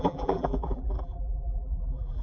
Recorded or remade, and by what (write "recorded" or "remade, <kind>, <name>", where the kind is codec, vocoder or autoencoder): remade, vocoder, BigVGAN v2